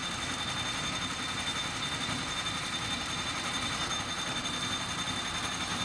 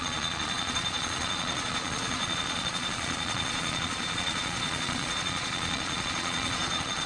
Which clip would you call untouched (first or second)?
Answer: first